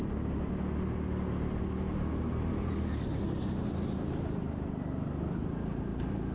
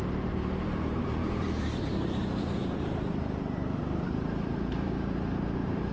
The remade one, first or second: second